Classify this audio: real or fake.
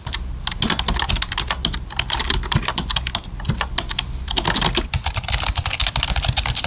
real